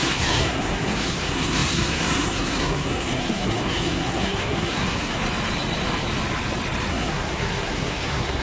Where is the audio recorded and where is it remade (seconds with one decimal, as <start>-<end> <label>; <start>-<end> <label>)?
0.0-5.2 remade; 5.2-6.9 recorded; 6.9-8.4 remade